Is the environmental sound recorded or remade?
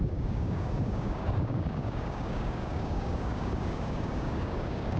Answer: remade